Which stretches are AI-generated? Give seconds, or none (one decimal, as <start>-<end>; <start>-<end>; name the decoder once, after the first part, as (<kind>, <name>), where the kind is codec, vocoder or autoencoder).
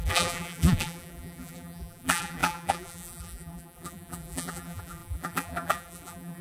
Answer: 0.0-6.4 (vocoder, BigVGAN v2)